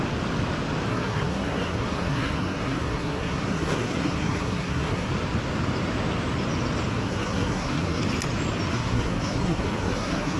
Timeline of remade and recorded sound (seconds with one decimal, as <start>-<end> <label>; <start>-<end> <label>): 0.0-0.9 recorded; 0.9-5.1 remade; 5.1-6.9 recorded; 6.9-8.0 remade; 8.0-8.7 recorded; 8.7-10.4 remade